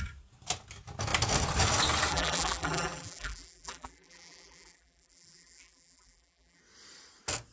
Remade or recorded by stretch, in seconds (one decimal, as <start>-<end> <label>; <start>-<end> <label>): 0.0-2.1 recorded; 2.1-6.6 remade; 6.6-7.5 recorded

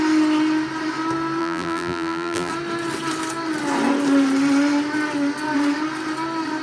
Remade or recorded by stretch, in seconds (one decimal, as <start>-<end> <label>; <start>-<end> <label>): 0.0-1.4 recorded; 1.4-2.5 remade; 2.5-6.6 recorded

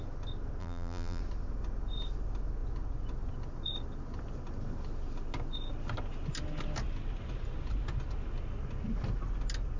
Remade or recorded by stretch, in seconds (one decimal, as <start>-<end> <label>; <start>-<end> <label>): 0.0-0.6 recorded; 0.6-1.2 remade; 1.2-9.8 recorded

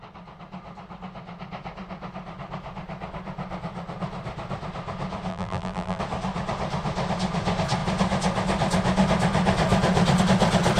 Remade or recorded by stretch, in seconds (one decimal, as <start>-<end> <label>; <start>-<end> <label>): 0.0-5.3 recorded; 5.3-6.0 remade; 6.0-10.8 recorded

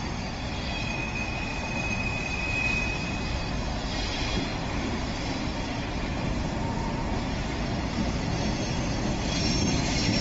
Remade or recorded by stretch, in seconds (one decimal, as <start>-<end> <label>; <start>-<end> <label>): 0.0-1.5 recorded; 1.5-3.5 remade; 3.5-4.5 recorded; 4.5-6.6 remade; 6.6-10.2 recorded

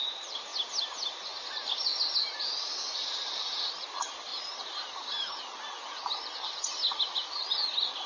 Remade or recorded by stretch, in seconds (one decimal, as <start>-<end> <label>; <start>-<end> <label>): 0.0-4.3 recorded; 4.3-6.6 remade; 6.6-8.1 recorded

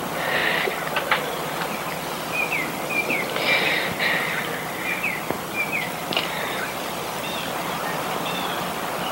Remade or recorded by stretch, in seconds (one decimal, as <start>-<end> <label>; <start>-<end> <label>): 0.0-0.4 remade; 0.4-0.9 recorded; 0.9-1.3 remade; 1.3-2.1 recorded; 2.1-9.1 remade

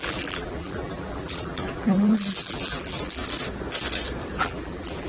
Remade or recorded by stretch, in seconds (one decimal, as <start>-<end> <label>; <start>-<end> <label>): 0.0-3.2 remade; 3.2-4.4 recorded; 4.4-5.1 remade